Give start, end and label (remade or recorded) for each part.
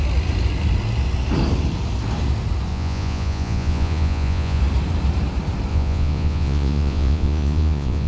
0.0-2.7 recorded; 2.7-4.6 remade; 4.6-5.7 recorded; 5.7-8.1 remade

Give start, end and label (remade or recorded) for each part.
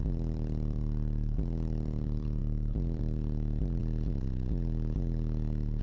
0.0-3.8 remade; 3.8-5.8 recorded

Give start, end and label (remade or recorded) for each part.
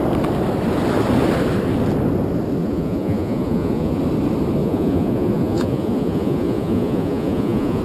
0.0-2.6 recorded; 2.6-4.0 remade; 4.0-4.6 recorded; 4.6-7.8 remade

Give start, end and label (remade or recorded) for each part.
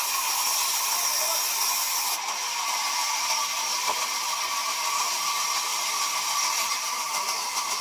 0.0-2.5 recorded; 2.5-4.4 remade; 4.4-5.7 recorded; 5.7-7.8 remade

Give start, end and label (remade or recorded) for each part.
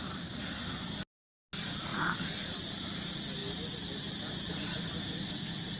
0.0-5.8 recorded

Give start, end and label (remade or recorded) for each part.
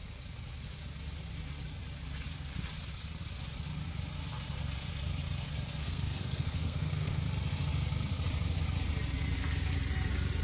0.0-5.8 recorded; 5.8-7.2 remade; 7.2-10.4 recorded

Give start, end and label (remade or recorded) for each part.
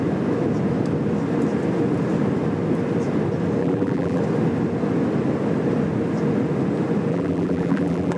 0.0-3.6 recorded; 3.6-4.2 remade; 4.2-7.1 recorded; 7.1-8.2 remade